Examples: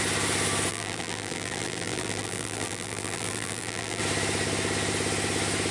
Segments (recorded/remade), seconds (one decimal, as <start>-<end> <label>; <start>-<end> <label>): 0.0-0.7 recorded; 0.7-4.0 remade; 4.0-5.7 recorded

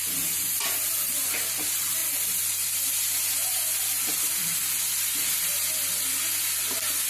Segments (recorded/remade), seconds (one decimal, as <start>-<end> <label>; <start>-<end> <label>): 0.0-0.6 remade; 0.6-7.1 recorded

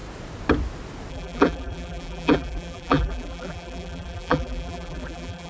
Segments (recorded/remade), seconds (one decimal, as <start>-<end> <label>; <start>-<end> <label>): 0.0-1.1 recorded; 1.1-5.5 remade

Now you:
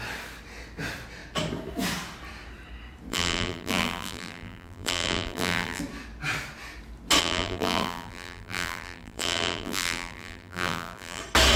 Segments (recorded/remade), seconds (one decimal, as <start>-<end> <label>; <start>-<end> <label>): 0.0-3.1 recorded; 3.1-5.8 remade; 5.8-7.2 recorded; 7.2-11.2 remade; 11.2-11.6 recorded

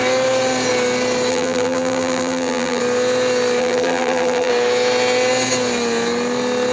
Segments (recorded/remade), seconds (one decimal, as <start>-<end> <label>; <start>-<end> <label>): 0.0-1.3 recorded; 1.3-2.8 remade; 2.8-3.6 recorded; 3.6-4.5 remade; 4.5-6.7 recorded